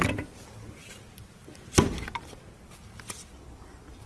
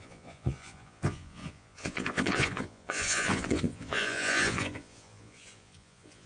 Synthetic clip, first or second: second